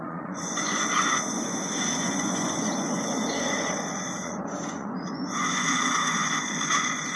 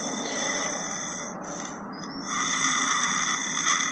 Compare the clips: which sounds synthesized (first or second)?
first